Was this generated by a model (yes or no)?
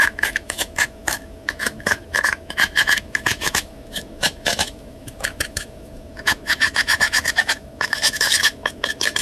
yes